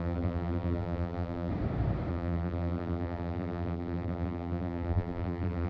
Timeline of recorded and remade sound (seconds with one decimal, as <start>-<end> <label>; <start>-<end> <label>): 0.0-1.5 remade; 1.5-2.1 recorded; 2.1-5.7 remade